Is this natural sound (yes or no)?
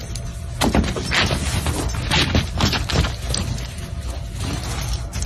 yes